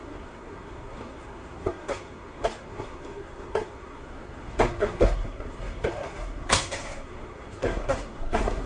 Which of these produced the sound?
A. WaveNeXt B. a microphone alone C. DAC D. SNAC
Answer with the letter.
D